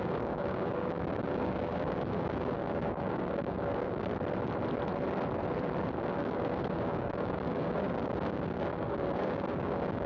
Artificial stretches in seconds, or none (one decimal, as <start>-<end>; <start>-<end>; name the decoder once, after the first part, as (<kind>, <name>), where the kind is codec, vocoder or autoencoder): 0.0-4.1 (codec, DAC); 5.9-10.1